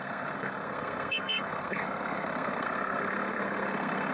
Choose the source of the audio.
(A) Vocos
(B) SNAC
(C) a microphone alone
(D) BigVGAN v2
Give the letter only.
B